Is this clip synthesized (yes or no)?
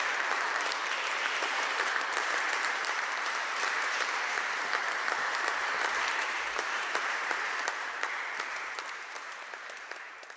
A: yes